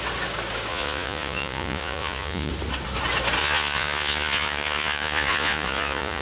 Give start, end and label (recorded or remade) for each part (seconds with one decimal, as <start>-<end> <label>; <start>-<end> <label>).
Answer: 0.0-0.7 recorded; 0.7-2.5 remade; 2.5-3.4 recorded; 3.4-6.2 remade